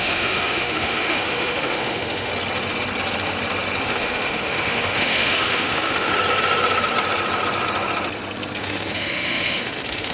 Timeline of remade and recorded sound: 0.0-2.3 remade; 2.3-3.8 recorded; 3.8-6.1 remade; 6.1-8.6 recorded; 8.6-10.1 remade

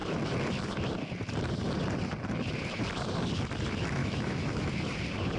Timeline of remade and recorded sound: 0.0-4.0 recorded; 4.0-4.7 remade; 4.7-5.4 recorded